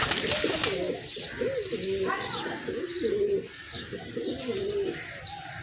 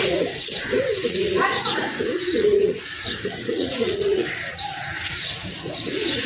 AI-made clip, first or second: second